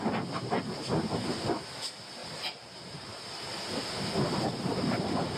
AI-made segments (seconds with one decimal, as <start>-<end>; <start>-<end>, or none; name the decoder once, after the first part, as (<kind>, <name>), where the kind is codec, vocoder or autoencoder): 2.2-5.4 (vocoder, BigVGAN v2)